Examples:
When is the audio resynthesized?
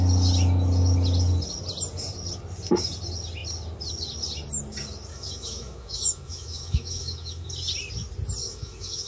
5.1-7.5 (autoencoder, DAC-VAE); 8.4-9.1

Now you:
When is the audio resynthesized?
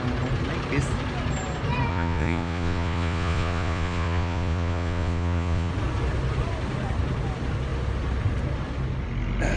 1.9-5.7 (vocoder, Vocos)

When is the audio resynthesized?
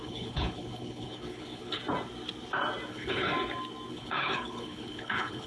0.0-1.8 (codec, HILCodec); 2.9-3.3; 3.9-5.5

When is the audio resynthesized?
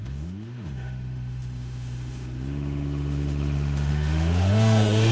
0.0-5.1 (autoencoder, DAC-VAE)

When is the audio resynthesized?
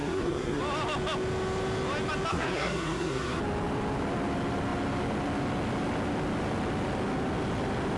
0.0-0.6 (codec, SNAC); 2.3-3.4